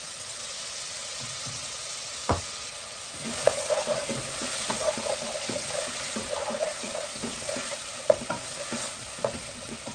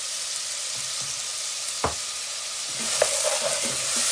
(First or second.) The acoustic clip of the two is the second